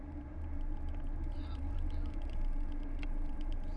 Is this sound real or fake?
fake